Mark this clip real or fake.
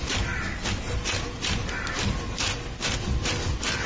real